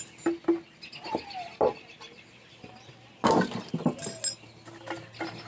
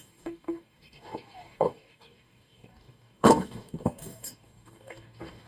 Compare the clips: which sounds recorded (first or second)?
first